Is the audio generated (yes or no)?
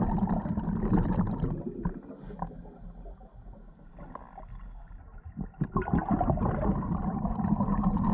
no